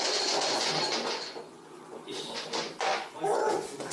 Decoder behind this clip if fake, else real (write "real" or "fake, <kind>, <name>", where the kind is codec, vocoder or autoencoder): fake, vocoder, Vocos